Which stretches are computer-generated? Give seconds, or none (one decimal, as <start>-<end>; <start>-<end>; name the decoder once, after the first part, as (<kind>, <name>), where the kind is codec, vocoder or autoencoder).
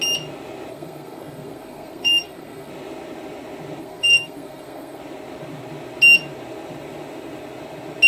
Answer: 0.7-2.7 (codec, SNAC); 3.8-5.0